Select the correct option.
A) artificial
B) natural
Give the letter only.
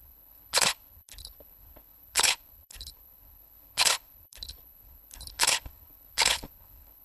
A